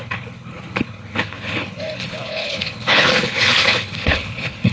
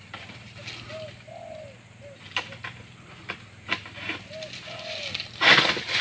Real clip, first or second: second